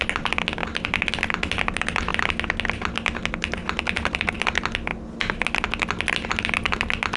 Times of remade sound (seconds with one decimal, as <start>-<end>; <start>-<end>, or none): none